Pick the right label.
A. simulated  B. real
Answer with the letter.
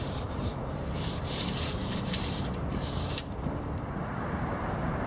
A